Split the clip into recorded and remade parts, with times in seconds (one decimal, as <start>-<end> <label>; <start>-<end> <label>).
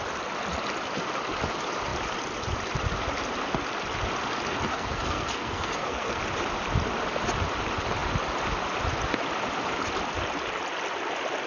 0.0-4.7 recorded; 4.7-6.2 remade; 6.2-11.5 recorded